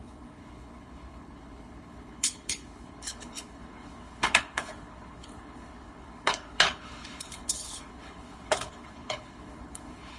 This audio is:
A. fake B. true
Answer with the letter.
A